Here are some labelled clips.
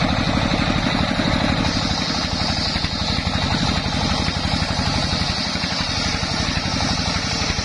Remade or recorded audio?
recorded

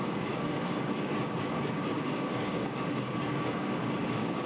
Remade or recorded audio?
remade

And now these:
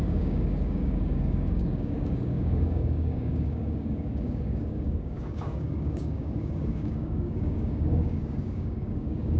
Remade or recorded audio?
remade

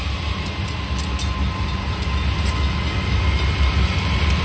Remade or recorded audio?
recorded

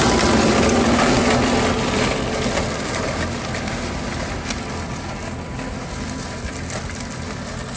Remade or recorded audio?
recorded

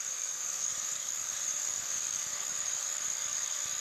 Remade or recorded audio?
remade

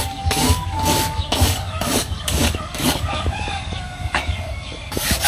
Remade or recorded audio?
remade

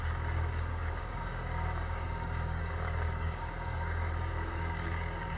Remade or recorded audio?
remade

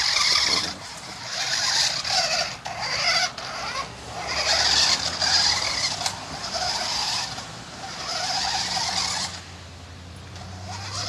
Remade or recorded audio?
recorded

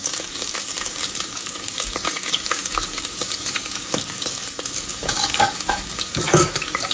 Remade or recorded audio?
remade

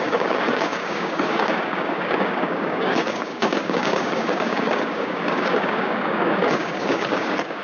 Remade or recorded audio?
remade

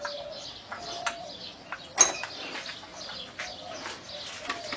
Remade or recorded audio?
recorded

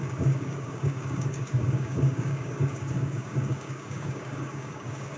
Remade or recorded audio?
remade